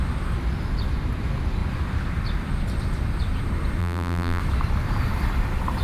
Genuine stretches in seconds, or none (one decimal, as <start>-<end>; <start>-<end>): 0.0-3.8; 4.4-5.8

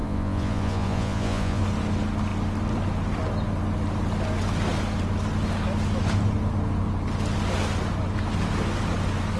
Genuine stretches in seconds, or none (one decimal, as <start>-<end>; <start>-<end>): 1.6-9.4

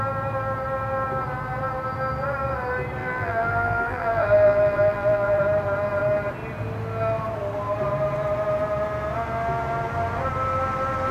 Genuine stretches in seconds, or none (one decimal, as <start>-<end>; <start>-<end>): 0.0-3.0; 5.4-11.1